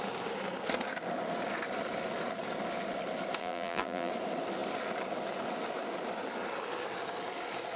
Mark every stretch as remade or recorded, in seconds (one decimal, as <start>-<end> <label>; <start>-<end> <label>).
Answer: 0.0-3.4 recorded; 3.4-4.1 remade; 4.1-7.8 recorded

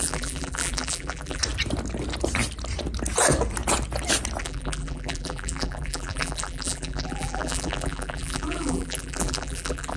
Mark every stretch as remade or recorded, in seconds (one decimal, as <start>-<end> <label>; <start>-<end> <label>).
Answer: 0.0-1.4 remade; 1.4-4.4 recorded; 4.4-10.0 remade

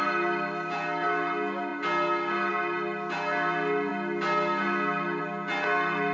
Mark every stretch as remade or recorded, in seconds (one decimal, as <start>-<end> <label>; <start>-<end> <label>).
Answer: 0.0-6.1 recorded

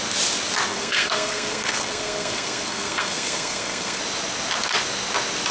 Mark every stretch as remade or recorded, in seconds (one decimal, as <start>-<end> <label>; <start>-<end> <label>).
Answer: 0.0-0.7 recorded; 0.7-4.0 remade; 4.0-5.5 recorded

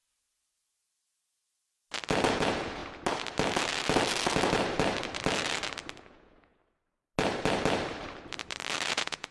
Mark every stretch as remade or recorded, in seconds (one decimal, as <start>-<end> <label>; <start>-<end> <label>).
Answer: 0.0-2.3 recorded; 2.3-2.8 remade; 2.8-6.0 recorded; 6.0-6.6 remade; 6.6-8.9 recorded; 8.9-9.3 remade

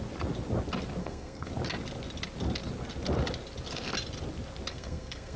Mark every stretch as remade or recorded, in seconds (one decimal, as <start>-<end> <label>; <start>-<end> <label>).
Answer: 0.0-1.0 recorded; 1.0-1.5 remade; 1.5-4.7 recorded; 4.7-5.4 remade